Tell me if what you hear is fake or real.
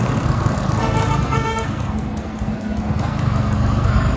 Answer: fake